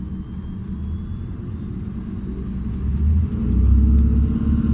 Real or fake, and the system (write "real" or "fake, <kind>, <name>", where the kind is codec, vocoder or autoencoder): real